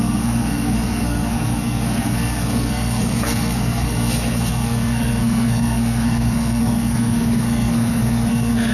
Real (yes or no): no